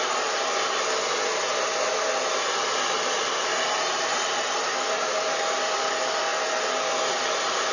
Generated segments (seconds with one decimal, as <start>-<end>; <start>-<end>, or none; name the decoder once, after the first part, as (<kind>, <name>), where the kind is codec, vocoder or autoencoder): 3.5-5.2 (vocoder, BigVGAN v2)